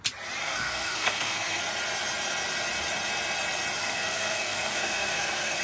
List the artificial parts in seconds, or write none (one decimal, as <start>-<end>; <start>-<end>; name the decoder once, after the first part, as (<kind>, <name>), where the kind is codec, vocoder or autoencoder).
0.4-1.6 (codec, SNAC); 3.8-5.6